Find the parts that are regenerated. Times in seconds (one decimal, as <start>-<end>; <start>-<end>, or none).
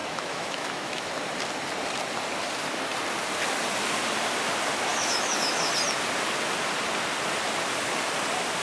0.0-1.1; 4.9-5.7